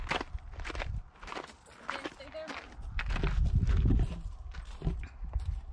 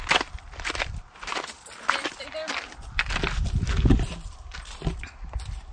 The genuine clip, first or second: first